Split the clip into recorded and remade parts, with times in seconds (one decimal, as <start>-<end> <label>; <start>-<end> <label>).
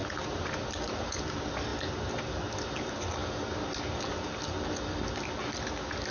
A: 0.0-6.1 recorded